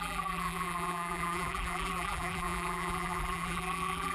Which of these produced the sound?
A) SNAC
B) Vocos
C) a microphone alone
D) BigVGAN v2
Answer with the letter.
D